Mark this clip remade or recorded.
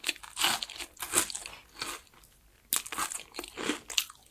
recorded